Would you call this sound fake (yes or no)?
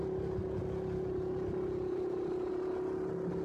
no